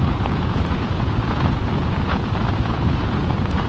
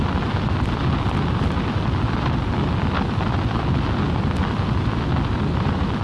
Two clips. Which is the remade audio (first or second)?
first